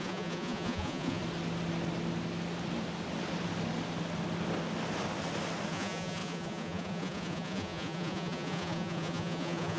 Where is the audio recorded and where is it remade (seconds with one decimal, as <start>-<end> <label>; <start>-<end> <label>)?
0.0-1.2 remade; 1.2-5.7 recorded; 5.7-9.8 remade